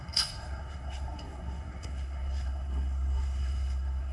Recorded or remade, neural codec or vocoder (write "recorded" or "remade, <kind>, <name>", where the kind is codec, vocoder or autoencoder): remade, codec, SNAC